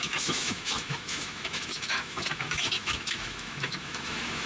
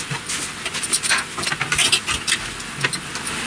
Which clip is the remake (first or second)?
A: first